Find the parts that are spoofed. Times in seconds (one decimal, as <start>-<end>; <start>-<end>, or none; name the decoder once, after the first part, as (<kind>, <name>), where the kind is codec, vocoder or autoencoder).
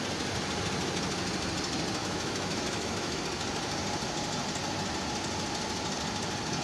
2.0-3.2 (autoencoder, DAC-VAE)